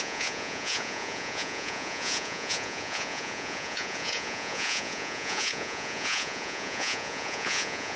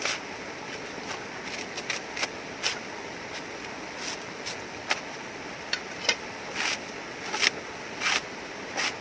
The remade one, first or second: first